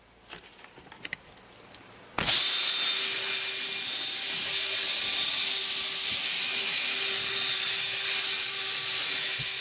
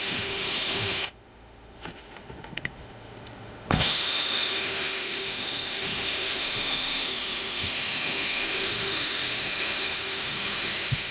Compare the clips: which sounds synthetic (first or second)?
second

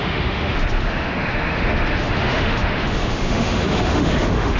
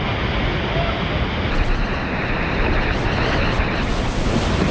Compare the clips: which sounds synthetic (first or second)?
first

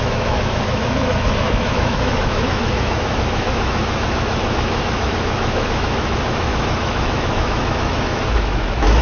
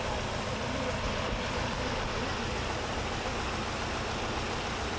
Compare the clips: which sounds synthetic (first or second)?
first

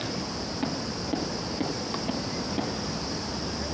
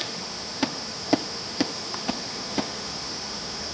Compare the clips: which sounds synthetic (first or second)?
second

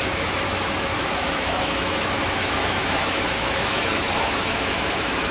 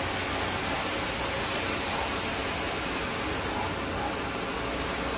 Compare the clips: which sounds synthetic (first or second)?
first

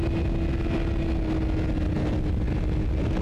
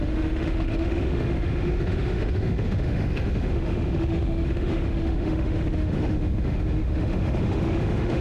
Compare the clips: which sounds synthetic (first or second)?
second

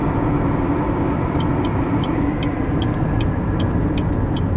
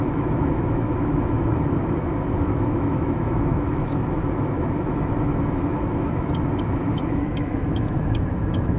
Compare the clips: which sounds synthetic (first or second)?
second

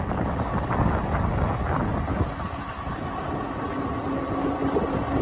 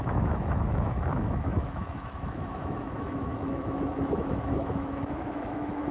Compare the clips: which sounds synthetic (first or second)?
second